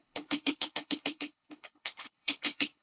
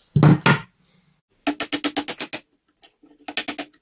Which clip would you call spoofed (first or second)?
first